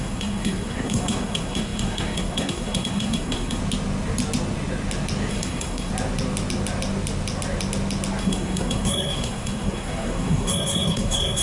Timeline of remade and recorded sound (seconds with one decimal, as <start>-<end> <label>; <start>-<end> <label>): 0.0-3.6 remade; 3.6-5.3 recorded; 5.3-5.9 remade; 5.9-8.2 recorded; 8.2-11.4 remade